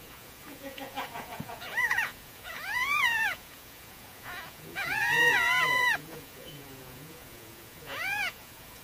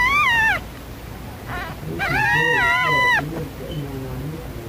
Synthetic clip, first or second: first